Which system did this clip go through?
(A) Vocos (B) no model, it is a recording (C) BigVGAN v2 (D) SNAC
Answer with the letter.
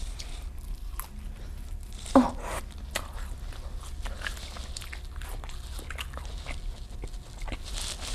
B